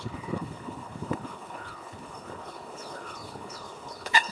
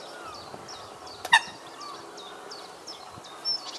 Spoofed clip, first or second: first